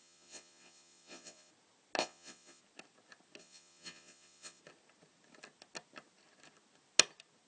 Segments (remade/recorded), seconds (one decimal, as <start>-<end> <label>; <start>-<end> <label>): 0.0-1.5 remade; 1.5-2.0 recorded; 2.0-2.6 remade; 2.6-3.4 recorded; 3.4-4.6 remade; 4.6-7.5 recorded